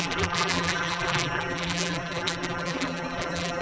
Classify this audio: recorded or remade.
remade